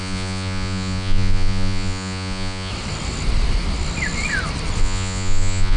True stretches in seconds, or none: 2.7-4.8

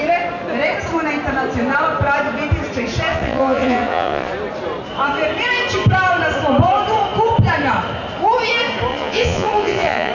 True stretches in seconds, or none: 0.0-3.1; 4.3-8.9

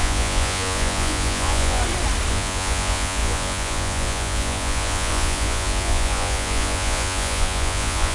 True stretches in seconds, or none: 1.8-2.3

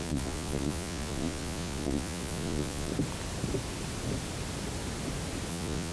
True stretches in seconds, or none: 2.9-5.5

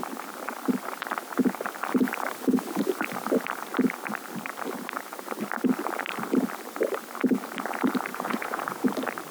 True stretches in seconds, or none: 0.0-8.1; 8.9-9.3